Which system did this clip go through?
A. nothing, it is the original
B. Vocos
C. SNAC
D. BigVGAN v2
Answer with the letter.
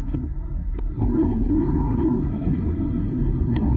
C